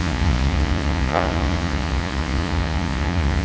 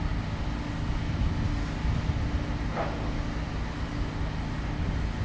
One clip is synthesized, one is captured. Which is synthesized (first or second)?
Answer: first